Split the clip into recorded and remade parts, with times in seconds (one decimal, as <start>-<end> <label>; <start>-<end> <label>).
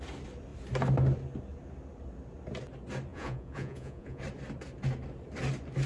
0.0-3.1 recorded; 3.1-4.2 remade; 4.2-5.9 recorded